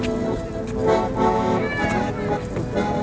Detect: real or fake real